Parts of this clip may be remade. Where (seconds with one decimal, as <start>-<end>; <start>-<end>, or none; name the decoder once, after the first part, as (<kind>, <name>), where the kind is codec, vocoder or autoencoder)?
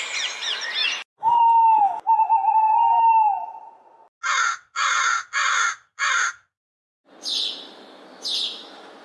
none